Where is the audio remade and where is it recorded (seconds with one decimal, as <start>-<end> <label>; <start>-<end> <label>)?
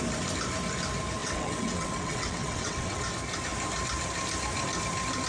0.0-1.2 recorded; 1.2-3.0 remade; 3.0-5.3 recorded